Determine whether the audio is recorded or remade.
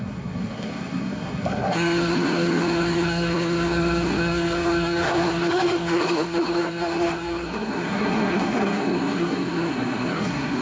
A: remade